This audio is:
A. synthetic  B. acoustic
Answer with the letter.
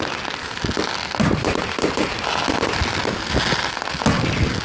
B